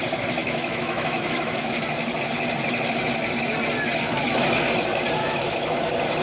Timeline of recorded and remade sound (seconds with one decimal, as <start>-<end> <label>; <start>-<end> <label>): 0.0-0.4 recorded; 0.4-1.8 remade; 1.8-5.2 recorded; 5.2-5.8 remade; 5.8-6.2 recorded